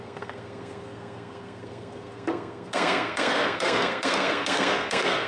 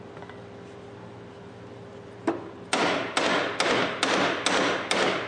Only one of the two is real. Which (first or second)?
second